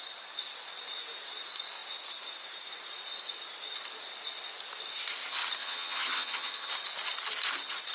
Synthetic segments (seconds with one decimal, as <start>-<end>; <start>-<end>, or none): 5.6-6.7